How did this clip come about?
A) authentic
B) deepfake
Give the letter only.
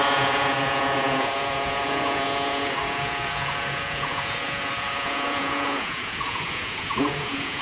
B